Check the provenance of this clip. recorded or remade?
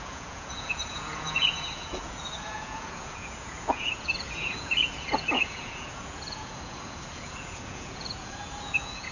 remade